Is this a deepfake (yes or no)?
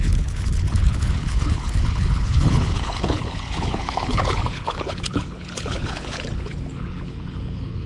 yes